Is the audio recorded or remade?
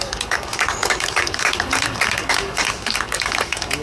remade